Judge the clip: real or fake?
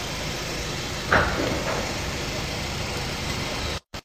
fake